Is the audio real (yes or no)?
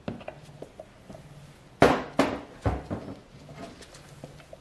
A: yes